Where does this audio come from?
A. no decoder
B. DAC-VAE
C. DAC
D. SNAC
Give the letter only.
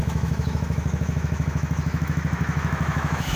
B